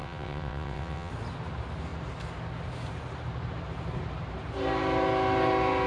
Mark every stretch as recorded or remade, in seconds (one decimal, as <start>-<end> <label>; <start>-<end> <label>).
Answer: 0.0-1.1 remade; 1.1-5.9 recorded

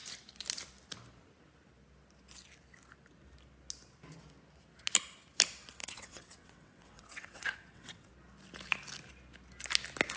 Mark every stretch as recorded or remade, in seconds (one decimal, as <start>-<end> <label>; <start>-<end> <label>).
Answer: 0.0-5.8 recorded; 5.8-8.1 remade; 8.1-10.2 recorded

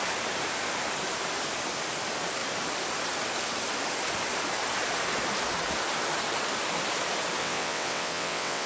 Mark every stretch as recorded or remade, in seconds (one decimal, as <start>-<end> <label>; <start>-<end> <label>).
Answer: 0.0-7.4 recorded; 7.4-8.7 remade

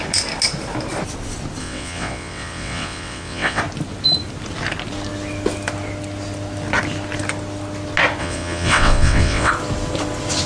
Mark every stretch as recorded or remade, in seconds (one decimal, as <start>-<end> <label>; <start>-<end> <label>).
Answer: 0.0-1.6 recorded; 1.6-3.6 remade; 3.6-8.2 recorded; 8.2-9.5 remade; 9.5-10.5 recorded

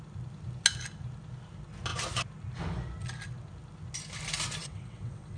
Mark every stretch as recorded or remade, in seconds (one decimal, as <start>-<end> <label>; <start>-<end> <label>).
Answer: 0.0-4.6 recorded; 4.6-5.4 remade

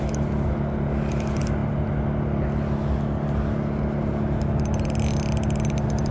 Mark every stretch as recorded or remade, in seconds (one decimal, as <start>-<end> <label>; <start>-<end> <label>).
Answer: 0.0-6.1 recorded